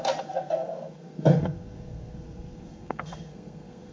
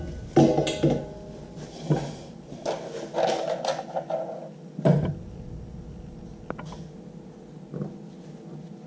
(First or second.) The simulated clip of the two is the first